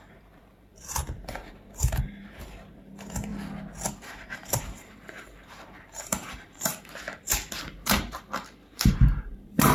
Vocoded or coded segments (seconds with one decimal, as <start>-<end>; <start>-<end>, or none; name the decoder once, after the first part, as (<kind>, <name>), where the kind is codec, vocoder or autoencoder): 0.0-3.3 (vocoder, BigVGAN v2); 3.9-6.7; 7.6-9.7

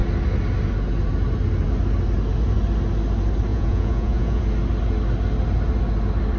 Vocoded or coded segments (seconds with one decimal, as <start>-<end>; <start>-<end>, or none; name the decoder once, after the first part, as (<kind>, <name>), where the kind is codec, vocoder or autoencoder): 3.5-4.4 (vocoder, Vocos)

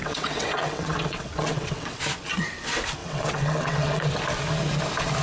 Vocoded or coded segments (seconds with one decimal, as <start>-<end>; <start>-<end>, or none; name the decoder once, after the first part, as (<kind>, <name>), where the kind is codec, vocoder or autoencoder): 0.0-2.0 (vocoder, WaveNeXt); 3.0-4.1

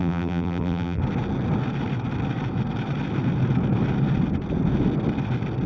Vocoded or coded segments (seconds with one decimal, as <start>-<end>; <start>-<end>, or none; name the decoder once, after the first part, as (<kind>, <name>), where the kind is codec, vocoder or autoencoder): 0.0-1.0 (vocoder, BigVGAN v2)

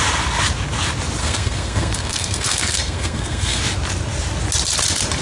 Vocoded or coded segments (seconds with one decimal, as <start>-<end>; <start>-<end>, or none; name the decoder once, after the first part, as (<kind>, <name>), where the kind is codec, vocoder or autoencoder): 1.2-3.6 (codec, SNAC)

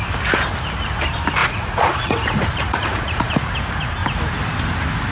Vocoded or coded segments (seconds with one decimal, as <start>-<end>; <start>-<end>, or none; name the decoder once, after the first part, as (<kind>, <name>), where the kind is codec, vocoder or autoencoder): 1.4-3.3 (vocoder, Vocos)

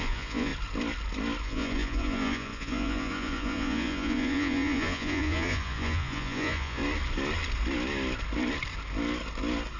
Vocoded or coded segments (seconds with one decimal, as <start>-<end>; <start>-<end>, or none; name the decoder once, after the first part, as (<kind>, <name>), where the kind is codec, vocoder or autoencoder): 0.0-0.5 (vocoder, Vocos); 1.4-6.8